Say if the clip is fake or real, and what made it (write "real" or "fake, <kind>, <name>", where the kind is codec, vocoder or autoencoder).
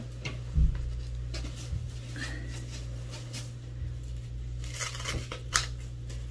real